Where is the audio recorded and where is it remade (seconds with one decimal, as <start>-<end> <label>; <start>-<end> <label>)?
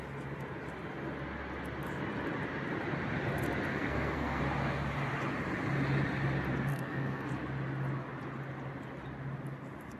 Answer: 0.0-3.7 recorded; 3.7-4.4 remade; 4.4-6.7 recorded; 6.7-7.3 remade; 7.3-10.0 recorded